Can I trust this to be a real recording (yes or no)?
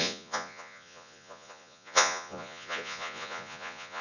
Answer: no